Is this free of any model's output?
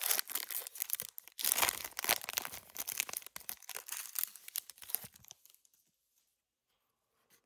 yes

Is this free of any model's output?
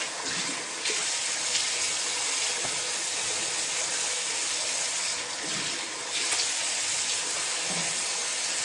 yes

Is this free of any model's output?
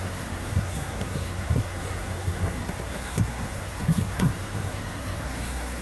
no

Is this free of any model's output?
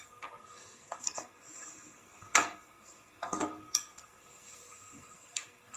no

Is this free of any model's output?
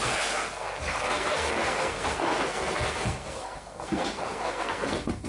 no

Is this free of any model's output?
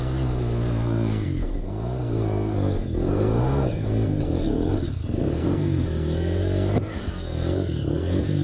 no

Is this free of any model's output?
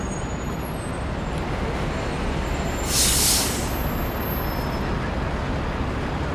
yes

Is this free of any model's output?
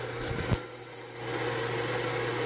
yes